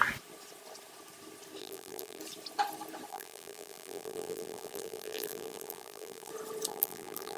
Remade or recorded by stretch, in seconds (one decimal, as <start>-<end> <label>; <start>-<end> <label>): 0.0-1.6 recorded; 1.6-2.2 remade; 2.2-3.1 recorded; 3.1-6.3 remade; 6.3-6.7 recorded; 6.7-7.4 remade